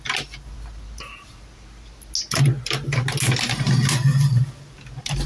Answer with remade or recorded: recorded